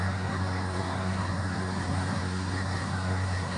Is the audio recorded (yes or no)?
no